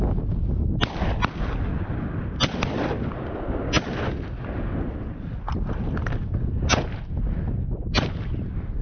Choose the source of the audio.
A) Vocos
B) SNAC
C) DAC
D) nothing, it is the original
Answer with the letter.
D